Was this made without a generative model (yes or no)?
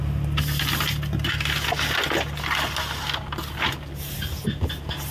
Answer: yes